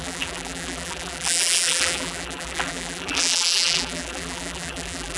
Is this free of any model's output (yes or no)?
no